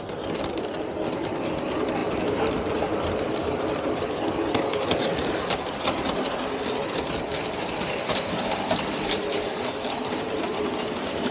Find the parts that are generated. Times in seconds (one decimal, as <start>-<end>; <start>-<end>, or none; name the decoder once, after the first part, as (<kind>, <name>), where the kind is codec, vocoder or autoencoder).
none